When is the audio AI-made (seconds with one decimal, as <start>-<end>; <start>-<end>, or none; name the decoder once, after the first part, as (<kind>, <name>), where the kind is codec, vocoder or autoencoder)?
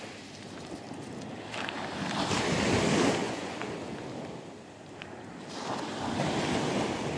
3.2-3.7 (vocoder, Vocos)